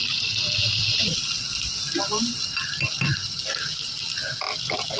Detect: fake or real real